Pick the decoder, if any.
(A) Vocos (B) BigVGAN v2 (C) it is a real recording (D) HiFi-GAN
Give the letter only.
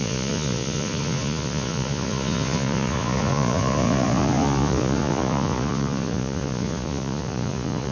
A